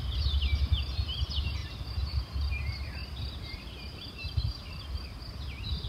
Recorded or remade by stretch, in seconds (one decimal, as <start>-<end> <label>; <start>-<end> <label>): 0.0-1.6 recorded; 1.6-2.5 remade; 2.5-5.9 recorded